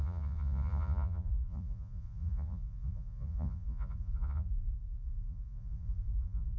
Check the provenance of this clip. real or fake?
fake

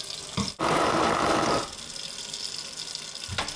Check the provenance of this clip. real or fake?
real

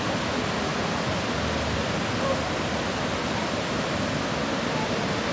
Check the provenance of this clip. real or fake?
real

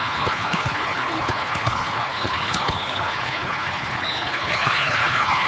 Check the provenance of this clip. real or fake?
fake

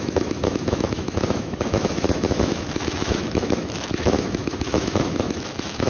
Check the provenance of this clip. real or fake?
fake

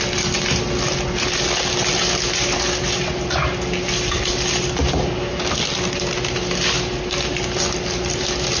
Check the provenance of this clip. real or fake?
real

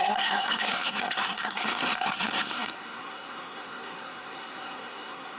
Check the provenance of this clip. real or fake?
fake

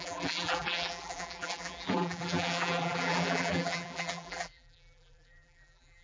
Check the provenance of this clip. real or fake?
fake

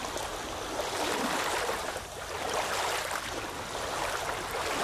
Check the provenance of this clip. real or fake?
real